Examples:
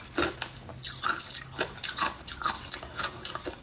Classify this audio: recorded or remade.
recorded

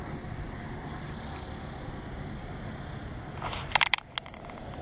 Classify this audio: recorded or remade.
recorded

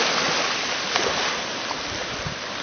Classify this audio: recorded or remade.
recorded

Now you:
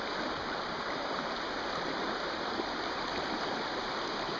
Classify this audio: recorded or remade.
recorded